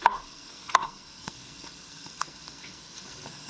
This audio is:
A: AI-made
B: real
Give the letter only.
A